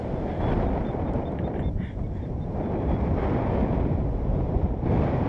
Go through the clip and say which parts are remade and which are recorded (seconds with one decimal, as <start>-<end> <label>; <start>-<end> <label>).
0.0-5.3 recorded